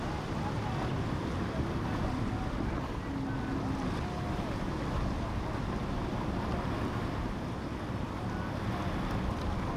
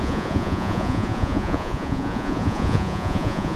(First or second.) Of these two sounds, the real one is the first